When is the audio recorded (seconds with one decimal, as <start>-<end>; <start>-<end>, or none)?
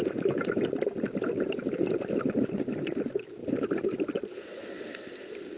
0.0-5.6